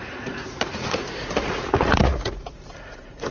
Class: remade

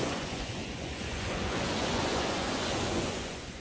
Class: remade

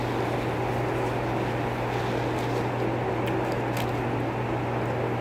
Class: recorded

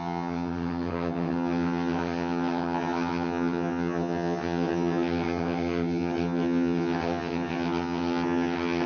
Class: remade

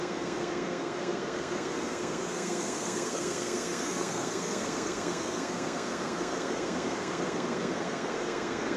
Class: remade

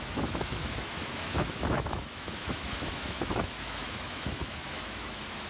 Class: remade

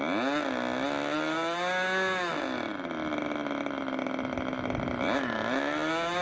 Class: recorded